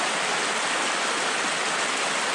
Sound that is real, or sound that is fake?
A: real